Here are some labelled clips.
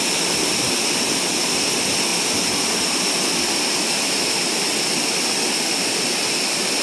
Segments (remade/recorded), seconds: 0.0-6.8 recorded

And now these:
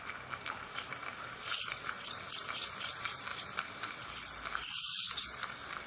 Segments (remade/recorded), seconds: 0.0-5.9 recorded

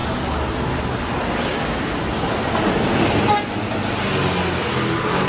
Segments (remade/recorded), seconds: 0.0-5.3 recorded

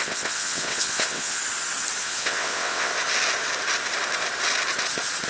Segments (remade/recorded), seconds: 0.0-1.4 remade; 1.4-2.0 recorded; 2.0-2.9 remade; 2.9-5.3 recorded

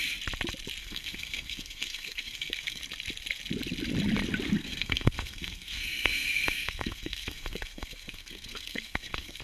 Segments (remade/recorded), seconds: 0.0-0.8 recorded; 0.8-2.8 remade; 2.8-4.6 recorded; 4.6-9.4 remade

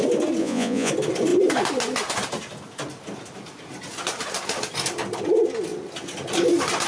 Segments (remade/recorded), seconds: 0.0-0.4 recorded; 0.4-0.9 remade; 0.9-6.9 recorded

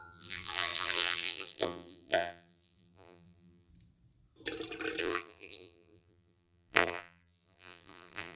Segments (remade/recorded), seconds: 0.0-3.7 remade; 3.7-5.0 recorded; 5.0-8.4 remade

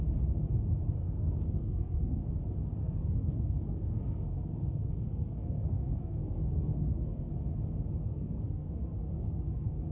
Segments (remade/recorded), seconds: 0.0-1.0 recorded; 1.0-2.2 remade; 2.2-2.8 recorded; 2.8-7.3 remade; 7.3-8.0 recorded; 8.0-9.9 remade